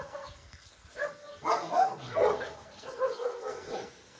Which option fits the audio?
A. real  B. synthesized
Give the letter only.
B